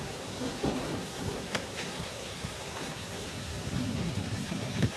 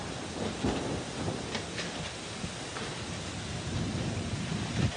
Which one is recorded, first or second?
second